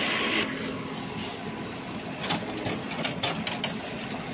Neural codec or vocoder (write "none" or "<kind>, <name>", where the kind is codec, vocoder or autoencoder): none